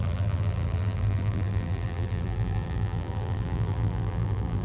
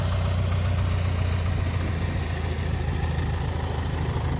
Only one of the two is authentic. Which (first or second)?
second